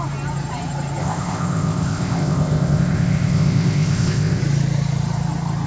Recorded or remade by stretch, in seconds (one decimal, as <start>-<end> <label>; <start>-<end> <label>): 0.0-1.0 recorded; 1.0-4.4 remade; 4.4-5.7 recorded